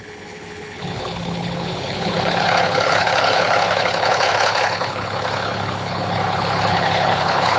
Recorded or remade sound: remade